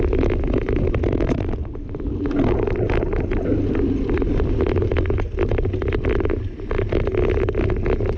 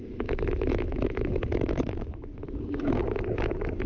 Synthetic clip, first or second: second